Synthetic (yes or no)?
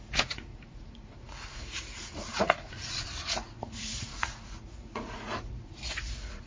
yes